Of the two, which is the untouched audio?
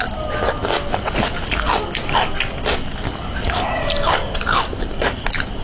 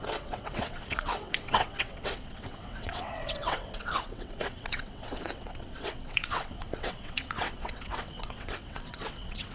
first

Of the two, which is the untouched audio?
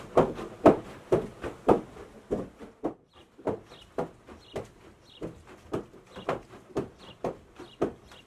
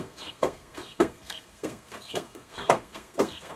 first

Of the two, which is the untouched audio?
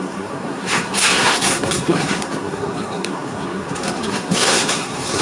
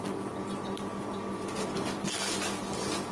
second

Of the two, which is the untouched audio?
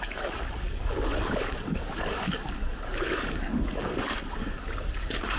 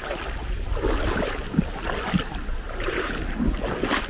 second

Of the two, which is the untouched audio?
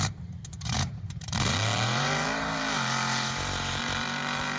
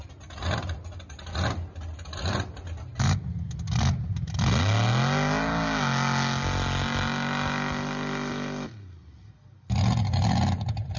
second